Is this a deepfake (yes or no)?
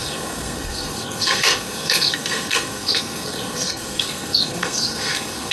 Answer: yes